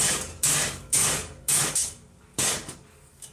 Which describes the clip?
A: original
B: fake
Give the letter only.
B